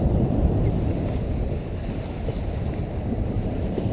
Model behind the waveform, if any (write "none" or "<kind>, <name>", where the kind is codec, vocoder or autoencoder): none